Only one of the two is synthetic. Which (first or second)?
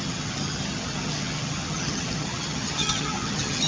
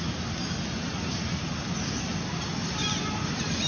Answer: first